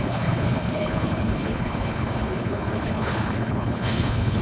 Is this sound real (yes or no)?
no